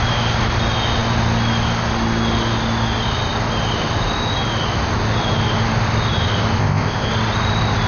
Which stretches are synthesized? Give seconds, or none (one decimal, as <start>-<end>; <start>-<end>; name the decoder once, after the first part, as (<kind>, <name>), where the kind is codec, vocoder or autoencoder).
6.6-7.1 (codec, ZipCodec)